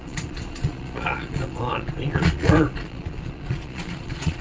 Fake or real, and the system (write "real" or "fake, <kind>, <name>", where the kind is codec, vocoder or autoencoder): fake, vocoder, Vocos